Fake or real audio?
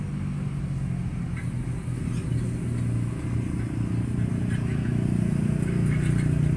real